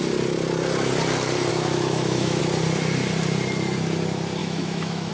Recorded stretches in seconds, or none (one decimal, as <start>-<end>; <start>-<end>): 0.0-1.5; 2.4-4.4